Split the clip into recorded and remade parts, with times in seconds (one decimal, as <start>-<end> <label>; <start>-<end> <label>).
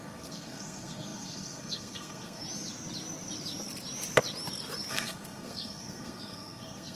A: 0.0-2.4 remade; 2.4-4.9 recorded; 4.9-6.9 remade